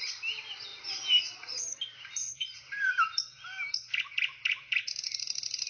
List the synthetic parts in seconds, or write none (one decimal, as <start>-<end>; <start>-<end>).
none